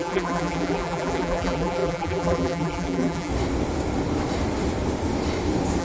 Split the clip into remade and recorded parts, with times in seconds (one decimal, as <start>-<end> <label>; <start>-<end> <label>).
0.0-3.3 remade; 3.3-5.8 recorded